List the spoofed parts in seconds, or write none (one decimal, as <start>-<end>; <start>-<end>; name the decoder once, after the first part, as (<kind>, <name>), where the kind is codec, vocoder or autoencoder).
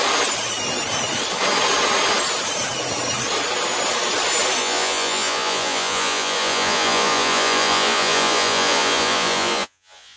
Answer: 4.6-10.2 (vocoder, Vocos)